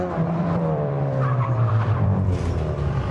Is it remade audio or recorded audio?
remade